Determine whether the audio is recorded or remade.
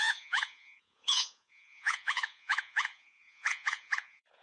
remade